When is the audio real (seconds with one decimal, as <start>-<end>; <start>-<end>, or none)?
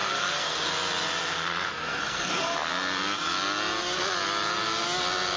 0.7-1.2; 2.7-5.4